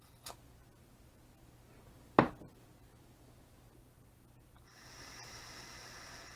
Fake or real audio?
real